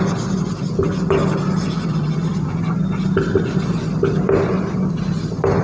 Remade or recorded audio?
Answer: recorded